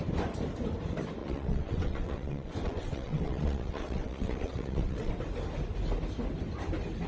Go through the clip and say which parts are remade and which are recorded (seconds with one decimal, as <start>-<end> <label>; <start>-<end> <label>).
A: 0.0-1.2 recorded; 1.2-5.1 remade; 5.1-7.1 recorded